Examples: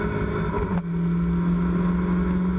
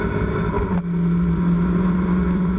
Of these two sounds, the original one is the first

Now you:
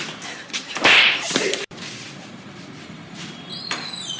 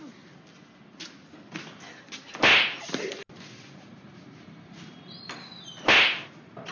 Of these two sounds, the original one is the second